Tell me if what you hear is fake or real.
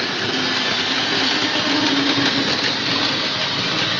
real